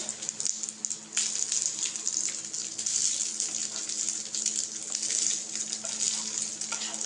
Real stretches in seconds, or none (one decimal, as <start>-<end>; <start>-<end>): 0.0-7.1